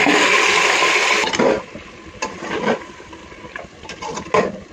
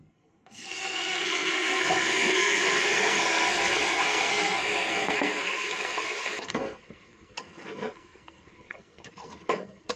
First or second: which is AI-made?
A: second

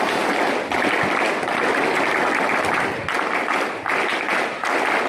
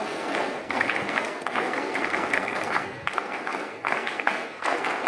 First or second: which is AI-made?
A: second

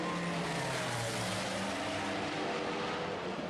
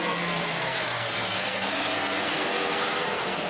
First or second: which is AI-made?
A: second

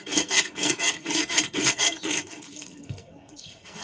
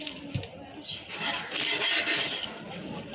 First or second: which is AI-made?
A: first